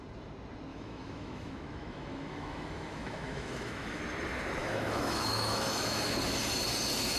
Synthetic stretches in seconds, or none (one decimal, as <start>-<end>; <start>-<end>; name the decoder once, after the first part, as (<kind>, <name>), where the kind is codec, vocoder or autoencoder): 0.7-4.0 (autoencoder, DAC-VAE); 4.6-6.1